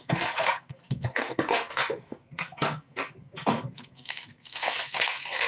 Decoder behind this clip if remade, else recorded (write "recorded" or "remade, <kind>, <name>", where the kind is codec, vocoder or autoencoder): remade, codec, SNAC